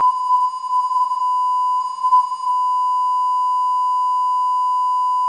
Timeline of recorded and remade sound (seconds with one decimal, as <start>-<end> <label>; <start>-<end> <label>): 0.0-1.2 remade; 1.2-1.8 recorded; 1.8-2.5 remade; 2.5-5.3 recorded